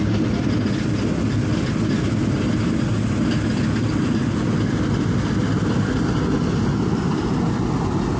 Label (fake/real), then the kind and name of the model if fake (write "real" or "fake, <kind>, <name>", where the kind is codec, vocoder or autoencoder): real